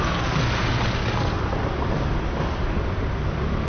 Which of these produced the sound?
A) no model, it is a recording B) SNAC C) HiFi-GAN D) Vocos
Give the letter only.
A